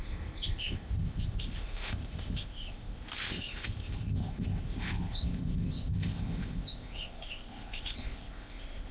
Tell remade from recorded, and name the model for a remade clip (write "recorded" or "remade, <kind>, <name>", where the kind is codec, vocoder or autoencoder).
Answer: remade, codec, ZipCodec